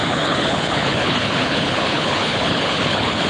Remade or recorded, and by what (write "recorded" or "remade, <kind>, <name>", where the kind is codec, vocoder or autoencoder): remade, codec, HILCodec